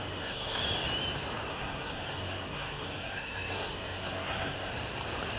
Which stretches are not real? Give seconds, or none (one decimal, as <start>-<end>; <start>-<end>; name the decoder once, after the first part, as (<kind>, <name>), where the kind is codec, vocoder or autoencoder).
0.0-0.6 (codec, SNAC); 1.5-4.7